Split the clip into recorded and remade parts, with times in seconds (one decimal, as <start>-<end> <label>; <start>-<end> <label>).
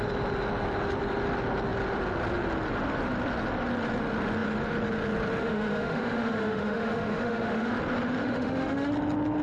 0.0-5.4 recorded; 5.4-7.7 remade; 7.7-8.2 recorded; 8.2-8.9 remade; 8.9-9.4 recorded